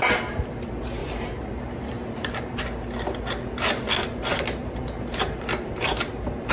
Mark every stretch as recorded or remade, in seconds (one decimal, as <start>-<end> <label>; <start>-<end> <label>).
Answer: 0.0-1.0 recorded; 1.0-2.6 remade; 2.6-4.0 recorded; 4.0-6.5 remade